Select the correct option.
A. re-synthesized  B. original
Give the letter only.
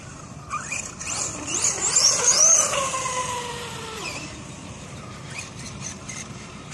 A